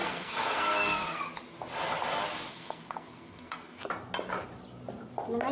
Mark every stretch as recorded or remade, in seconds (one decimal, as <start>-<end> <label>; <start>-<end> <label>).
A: 0.0-1.2 remade; 1.2-2.5 recorded; 2.5-3.9 remade; 3.9-5.5 recorded